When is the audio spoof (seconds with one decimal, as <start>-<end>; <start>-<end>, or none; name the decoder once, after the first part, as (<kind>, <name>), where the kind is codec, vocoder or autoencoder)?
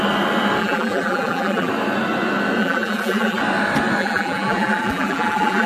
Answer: 0.6-1.7 (vocoder, BigVGAN v2); 2.6-3.4; 4.0-5.7